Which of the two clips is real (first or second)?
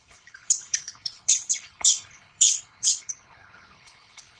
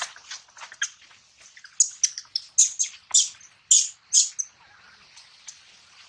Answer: second